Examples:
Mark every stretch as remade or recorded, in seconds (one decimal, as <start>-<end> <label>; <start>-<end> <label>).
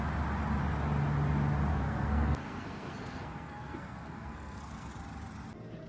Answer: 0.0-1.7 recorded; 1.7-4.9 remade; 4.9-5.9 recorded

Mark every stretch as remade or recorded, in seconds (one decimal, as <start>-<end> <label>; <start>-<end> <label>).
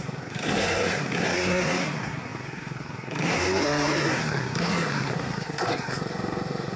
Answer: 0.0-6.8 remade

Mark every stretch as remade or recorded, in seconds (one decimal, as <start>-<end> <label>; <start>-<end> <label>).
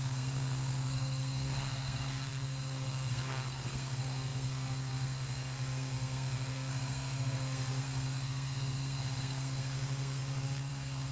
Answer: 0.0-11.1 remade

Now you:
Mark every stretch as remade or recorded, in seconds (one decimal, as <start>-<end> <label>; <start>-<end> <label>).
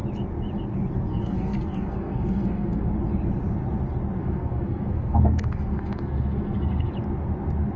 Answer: 0.0-1.1 recorded; 1.1-2.9 remade; 2.9-4.2 recorded; 4.2-6.9 remade; 6.9-7.8 recorded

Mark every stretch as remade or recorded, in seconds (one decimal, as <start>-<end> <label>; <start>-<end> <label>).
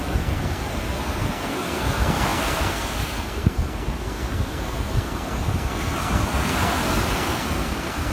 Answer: 0.0-8.1 remade